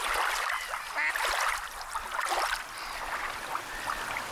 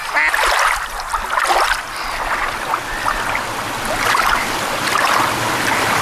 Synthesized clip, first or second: first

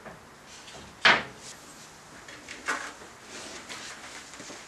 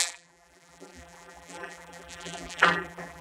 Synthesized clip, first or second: second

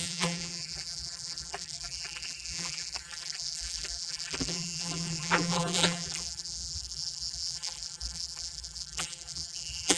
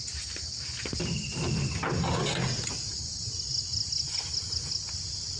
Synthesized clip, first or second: first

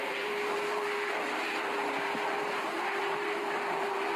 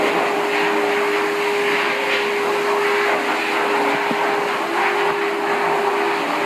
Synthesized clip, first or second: first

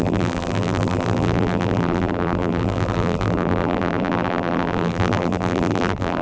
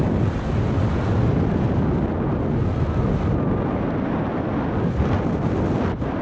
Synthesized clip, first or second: first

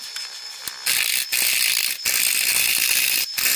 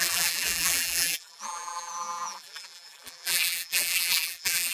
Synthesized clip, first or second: second